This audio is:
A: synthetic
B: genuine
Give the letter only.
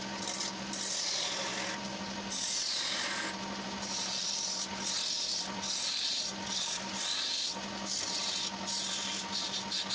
B